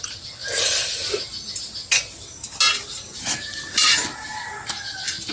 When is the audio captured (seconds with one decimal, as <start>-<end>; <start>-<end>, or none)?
0.0-5.3